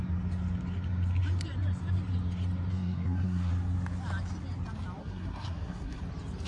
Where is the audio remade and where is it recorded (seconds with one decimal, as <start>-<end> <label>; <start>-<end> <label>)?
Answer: 0.0-2.7 recorded; 2.7-3.5 remade; 3.5-5.0 recorded; 5.0-6.0 remade; 6.0-6.5 recorded